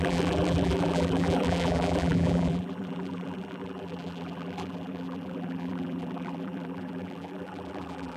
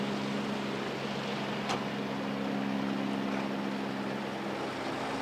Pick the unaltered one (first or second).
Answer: second